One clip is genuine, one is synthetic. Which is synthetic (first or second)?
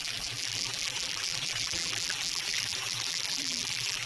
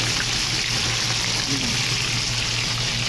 first